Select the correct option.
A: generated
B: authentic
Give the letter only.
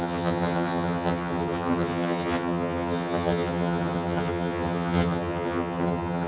A